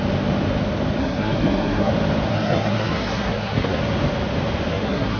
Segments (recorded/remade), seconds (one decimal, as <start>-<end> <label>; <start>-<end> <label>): 0.0-1.0 recorded; 1.0-1.9 remade; 1.9-2.3 recorded; 2.3-3.8 remade; 3.8-4.7 recorded; 4.7-5.2 remade